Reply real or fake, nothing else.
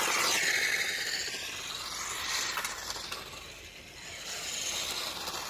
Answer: real